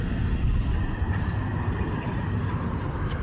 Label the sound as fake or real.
real